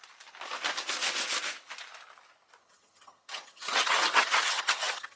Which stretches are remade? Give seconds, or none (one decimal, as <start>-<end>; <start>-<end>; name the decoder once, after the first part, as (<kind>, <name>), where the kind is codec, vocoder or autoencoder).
2.6-5.2 (vocoder, HiFi-GAN)